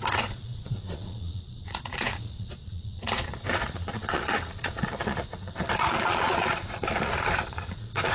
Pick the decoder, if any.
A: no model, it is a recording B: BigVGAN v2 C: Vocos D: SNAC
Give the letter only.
C